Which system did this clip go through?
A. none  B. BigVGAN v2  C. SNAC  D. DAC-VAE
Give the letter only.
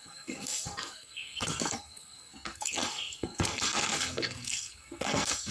C